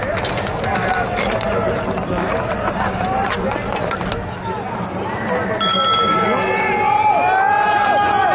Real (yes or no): yes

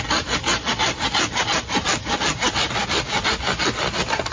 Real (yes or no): yes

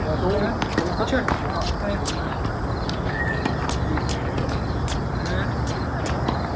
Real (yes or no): yes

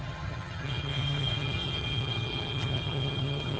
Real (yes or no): no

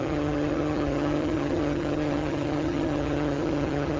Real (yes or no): no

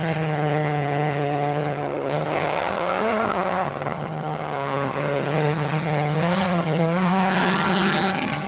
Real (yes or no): no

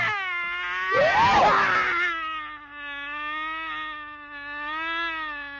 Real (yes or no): yes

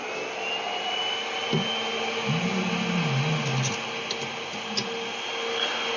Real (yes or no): yes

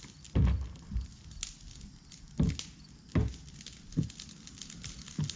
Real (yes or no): yes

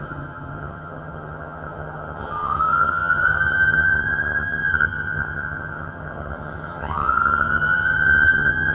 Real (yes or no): no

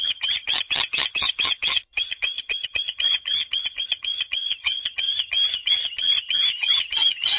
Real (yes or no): no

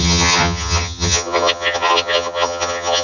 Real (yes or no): no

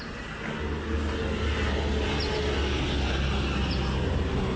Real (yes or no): yes